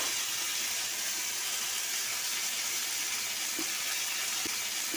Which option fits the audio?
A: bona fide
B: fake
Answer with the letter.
A